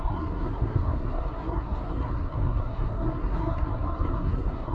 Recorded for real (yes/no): no